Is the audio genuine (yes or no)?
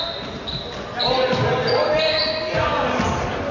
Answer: yes